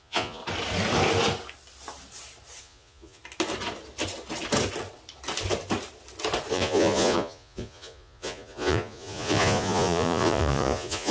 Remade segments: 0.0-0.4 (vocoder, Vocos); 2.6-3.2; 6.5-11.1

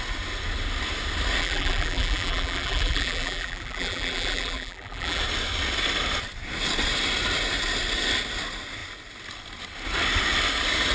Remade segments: 1.4-5.2 (vocoder, BigVGAN v2)

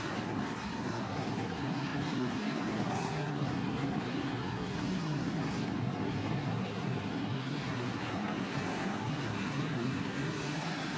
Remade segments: 0.0-11.0 (codec, SNAC)